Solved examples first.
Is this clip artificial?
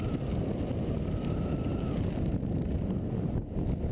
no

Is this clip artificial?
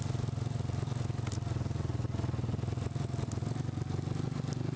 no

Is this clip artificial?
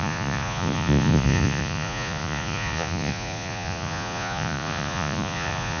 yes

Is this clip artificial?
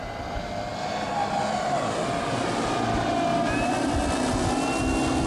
no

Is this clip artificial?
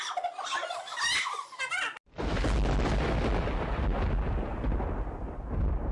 no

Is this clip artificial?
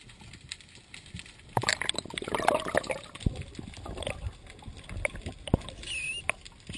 no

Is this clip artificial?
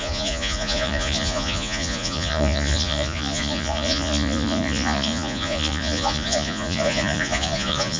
yes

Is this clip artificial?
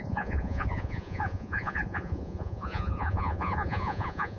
yes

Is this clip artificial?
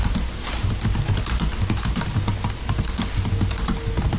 no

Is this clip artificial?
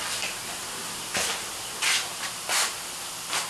no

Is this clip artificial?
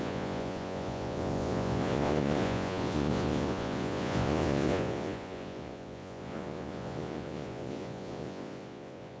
yes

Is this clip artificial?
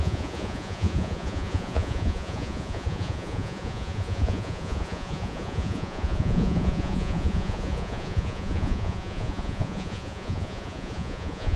yes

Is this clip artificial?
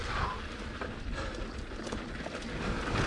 no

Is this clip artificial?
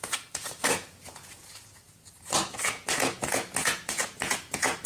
yes